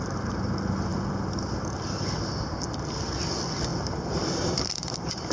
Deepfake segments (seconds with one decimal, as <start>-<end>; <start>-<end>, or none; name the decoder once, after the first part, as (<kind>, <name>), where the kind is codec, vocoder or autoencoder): 3.7-5.3 (vocoder, BigVGAN v2)